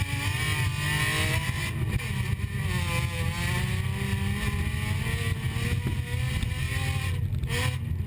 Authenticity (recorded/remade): recorded